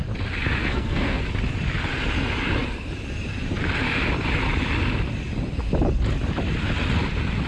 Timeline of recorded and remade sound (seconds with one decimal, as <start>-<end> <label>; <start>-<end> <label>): 0.0-0.6 recorded; 0.6-1.2 remade; 1.2-7.5 recorded